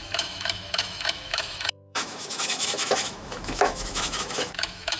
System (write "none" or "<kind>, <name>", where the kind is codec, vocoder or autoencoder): autoencoder, DAC-VAE